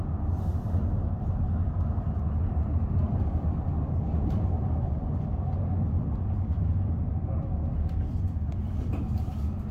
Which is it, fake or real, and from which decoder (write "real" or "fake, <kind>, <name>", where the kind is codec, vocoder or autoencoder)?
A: real